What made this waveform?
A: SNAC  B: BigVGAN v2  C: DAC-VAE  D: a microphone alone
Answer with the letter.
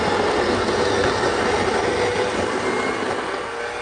D